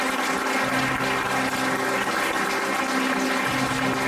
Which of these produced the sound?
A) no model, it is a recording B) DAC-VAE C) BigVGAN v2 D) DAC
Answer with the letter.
A